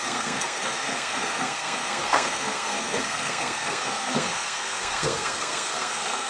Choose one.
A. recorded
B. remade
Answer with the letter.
B